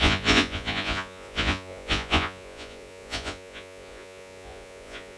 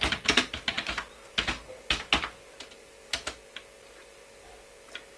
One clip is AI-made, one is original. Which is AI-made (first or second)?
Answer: first